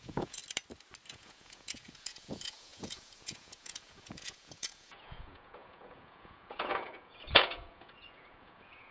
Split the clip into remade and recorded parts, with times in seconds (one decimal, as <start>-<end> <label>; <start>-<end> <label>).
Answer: 0.0-0.4 remade; 0.4-1.1 recorded; 1.1-8.9 remade